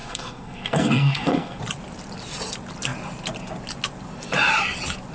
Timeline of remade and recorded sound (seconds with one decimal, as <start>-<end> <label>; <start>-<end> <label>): 0.0-1.6 remade; 1.6-5.1 recorded